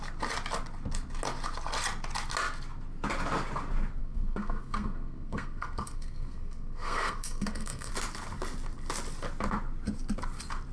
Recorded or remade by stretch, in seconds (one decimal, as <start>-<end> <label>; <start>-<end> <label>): 0.0-4.0 recorded; 4.0-7.9 remade; 7.9-10.7 recorded